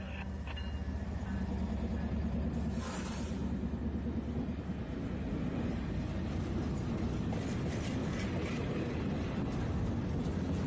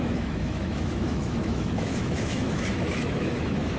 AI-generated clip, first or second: second